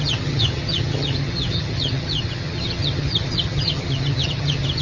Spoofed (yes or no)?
yes